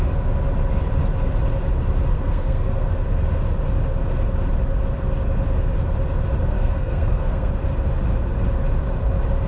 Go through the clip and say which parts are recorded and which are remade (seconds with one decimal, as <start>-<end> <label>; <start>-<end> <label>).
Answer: 0.0-2.1 recorded; 2.1-2.9 remade; 2.9-6.4 recorded; 6.4-7.5 remade; 7.5-9.5 recorded